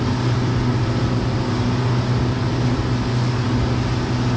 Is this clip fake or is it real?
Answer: real